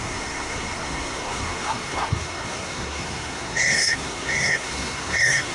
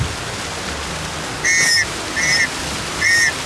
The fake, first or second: first